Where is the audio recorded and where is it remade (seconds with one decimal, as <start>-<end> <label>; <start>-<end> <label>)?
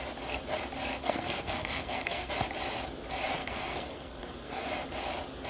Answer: 0.0-0.9 recorded; 0.9-2.3 remade; 2.3-3.4 recorded; 3.4-4.7 remade; 4.7-5.5 recorded